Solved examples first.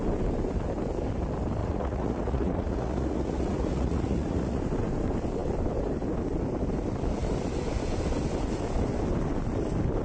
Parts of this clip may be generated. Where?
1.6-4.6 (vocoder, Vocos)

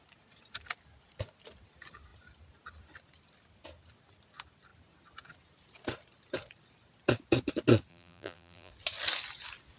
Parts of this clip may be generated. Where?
7.9-8.7 (vocoder, BigVGAN v2)

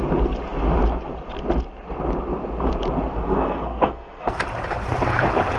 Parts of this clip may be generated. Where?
3.1-4.4 (codec, SNAC)

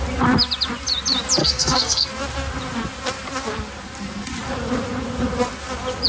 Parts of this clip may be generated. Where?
1.4-2.1 (codec, SNAC)

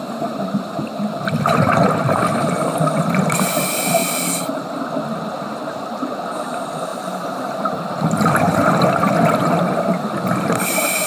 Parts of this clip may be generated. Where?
6.9-10.0 (vocoder, BigVGAN v2)